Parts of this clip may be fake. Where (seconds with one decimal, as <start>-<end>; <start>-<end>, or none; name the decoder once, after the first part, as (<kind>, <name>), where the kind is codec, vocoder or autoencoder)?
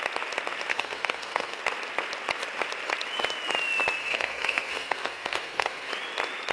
0.7-1.6 (codec, SNAC); 4.0-5.9